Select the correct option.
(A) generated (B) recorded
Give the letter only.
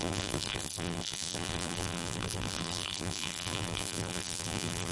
A